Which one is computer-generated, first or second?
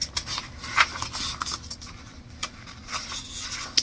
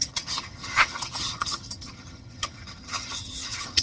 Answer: second